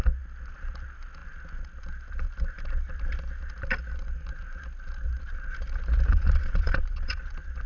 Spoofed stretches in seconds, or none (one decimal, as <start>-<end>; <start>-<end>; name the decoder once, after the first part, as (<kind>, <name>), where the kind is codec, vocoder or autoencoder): 6.1-7.2 (vocoder, Vocos)